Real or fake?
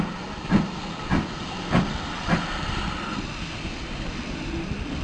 fake